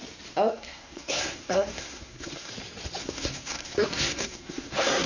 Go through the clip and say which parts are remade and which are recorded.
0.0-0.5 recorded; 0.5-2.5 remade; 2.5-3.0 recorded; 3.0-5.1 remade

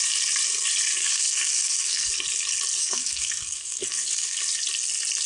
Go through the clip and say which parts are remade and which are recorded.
0.0-1.0 recorded; 1.0-2.1 remade; 2.1-2.8 recorded; 2.8-4.4 remade; 4.4-5.3 recorded

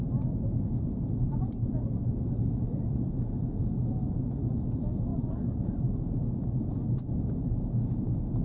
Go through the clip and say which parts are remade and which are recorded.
0.0-8.4 recorded

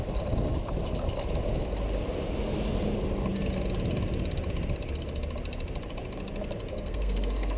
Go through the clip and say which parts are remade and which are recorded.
0.0-6.7 recorded; 6.7-7.6 remade

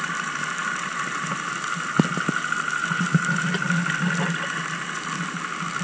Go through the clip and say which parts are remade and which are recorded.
0.0-5.8 recorded

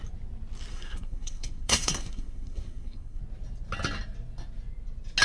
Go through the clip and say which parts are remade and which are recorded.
0.0-0.7 recorded; 0.7-3.2 remade; 3.2-5.2 recorded

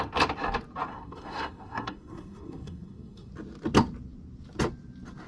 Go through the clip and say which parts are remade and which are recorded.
0.0-0.9 recorded; 0.9-3.3 remade; 3.3-5.3 recorded